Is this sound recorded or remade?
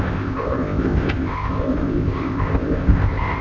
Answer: remade